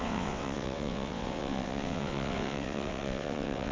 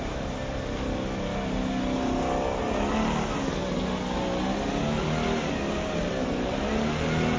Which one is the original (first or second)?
second